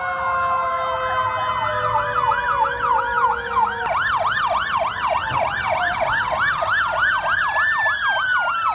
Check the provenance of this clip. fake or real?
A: real